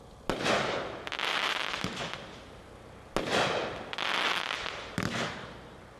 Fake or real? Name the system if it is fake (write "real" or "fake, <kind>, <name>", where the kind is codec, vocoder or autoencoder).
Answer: real